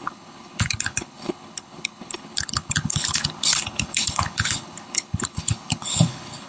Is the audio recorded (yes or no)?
no